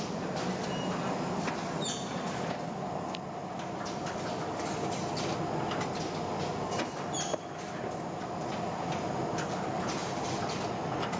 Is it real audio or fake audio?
real